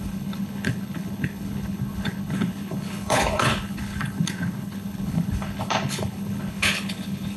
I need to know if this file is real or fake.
fake